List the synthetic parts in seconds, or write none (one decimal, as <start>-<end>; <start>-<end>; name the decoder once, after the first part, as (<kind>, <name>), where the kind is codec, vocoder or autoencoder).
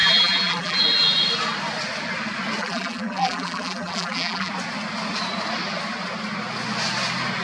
0.0-0.8 (vocoder, BigVGAN v2); 2.6-4.5